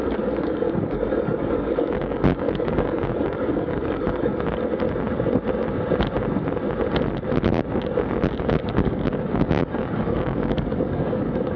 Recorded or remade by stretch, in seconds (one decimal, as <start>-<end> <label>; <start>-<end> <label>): 0.0-4.3 remade; 4.3-8.4 recorded; 8.4-11.6 remade